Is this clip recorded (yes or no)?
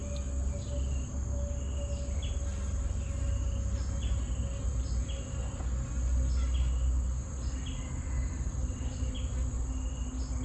yes